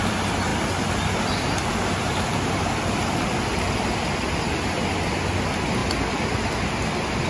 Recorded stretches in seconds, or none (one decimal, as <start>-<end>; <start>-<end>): 0.0-7.3